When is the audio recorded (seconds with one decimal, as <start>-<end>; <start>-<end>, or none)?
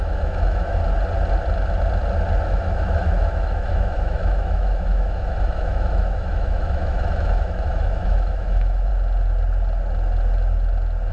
0.8-2.4; 8.9-11.1